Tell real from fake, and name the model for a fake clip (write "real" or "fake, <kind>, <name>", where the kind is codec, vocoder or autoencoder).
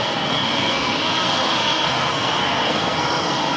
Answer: fake, codec, SNAC